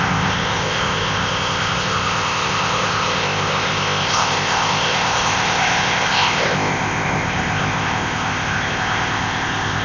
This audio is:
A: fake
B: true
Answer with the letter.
A